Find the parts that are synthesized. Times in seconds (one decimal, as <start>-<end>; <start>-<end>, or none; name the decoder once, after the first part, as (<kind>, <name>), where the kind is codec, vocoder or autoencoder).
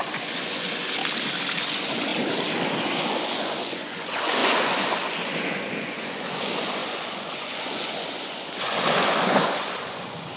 0.0-1.0 (vocoder, Vocos); 1.6-2.1; 2.8-10.4